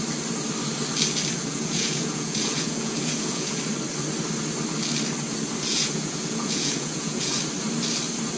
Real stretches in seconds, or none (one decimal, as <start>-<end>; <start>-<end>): 0.0-1.4; 3.6-5.7; 7.4-8.4